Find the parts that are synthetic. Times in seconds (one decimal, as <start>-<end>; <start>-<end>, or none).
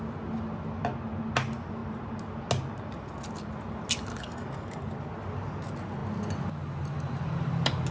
4.1-4.9